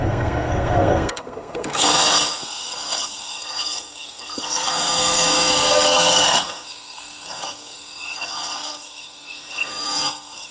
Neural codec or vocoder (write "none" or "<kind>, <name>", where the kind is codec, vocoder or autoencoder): codec, SNAC